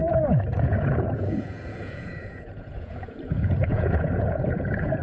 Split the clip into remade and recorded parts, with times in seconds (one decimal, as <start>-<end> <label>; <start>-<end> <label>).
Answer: 0.0-5.0 remade